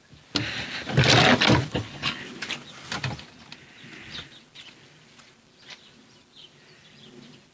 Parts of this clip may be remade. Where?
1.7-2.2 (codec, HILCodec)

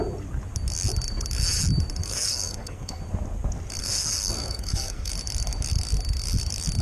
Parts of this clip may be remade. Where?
2.0-3.0 (codec, SNAC); 3.8-5.1